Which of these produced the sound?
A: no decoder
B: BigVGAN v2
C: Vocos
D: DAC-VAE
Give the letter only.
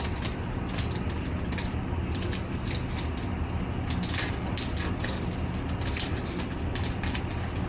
A